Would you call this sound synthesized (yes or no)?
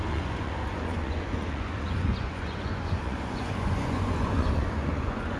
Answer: yes